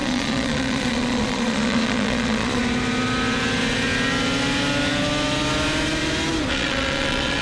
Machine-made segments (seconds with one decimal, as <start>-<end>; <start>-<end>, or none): 0.0-2.6; 6.5-7.4